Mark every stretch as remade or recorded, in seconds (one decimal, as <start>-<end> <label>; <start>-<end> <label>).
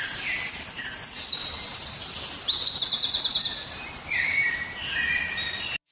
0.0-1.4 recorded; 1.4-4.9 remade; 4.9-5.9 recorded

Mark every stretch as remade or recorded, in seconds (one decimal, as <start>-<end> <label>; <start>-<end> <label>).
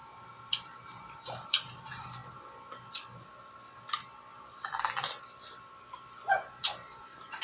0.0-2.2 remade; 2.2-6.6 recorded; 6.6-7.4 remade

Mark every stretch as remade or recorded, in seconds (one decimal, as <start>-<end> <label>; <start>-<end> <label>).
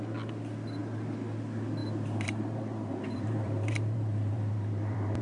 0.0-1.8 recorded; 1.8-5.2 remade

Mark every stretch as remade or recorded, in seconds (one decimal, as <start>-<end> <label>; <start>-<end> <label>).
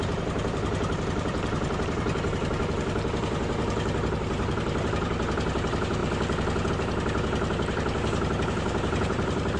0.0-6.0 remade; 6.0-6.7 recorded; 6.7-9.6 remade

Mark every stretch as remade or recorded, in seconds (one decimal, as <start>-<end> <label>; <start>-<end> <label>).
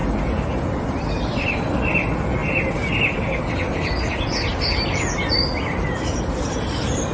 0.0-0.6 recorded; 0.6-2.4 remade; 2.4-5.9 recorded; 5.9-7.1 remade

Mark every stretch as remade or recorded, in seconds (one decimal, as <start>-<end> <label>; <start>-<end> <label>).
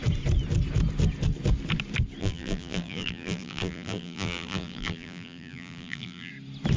0.0-2.2 recorded; 2.2-6.3 remade; 6.3-6.8 recorded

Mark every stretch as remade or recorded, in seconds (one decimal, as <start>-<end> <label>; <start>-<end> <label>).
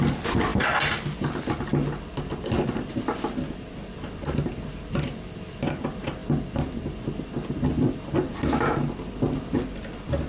0.0-10.3 recorded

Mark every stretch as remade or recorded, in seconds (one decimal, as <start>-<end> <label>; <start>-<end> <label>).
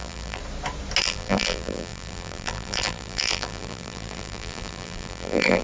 0.0-0.4 remade; 0.4-1.0 recorded; 1.0-5.6 remade